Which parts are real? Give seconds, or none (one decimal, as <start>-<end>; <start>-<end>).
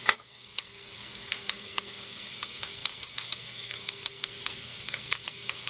none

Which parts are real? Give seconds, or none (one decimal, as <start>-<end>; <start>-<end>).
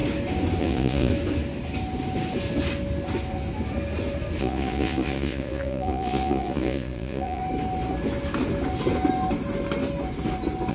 0.0-0.6; 1.1-4.4; 7.4-10.7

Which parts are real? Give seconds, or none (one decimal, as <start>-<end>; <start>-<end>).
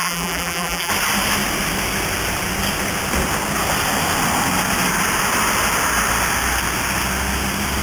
0.9-7.8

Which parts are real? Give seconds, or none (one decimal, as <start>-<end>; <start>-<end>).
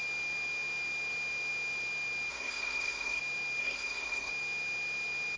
0.0-2.3; 3.2-3.6; 4.3-5.4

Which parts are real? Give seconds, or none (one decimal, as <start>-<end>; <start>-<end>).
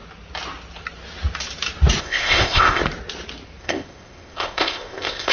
0.0-2.0; 2.8-3.6